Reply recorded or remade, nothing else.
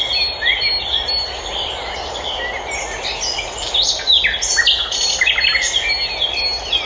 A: recorded